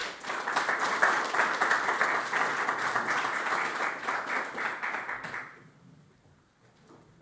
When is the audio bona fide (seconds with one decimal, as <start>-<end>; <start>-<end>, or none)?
0.0-7.2